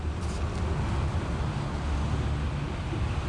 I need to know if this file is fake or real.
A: real